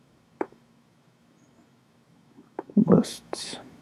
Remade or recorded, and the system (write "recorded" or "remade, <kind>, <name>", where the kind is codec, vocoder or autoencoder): remade, autoencoder, DAC-VAE